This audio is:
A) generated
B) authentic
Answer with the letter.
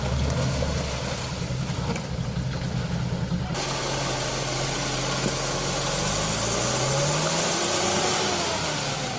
B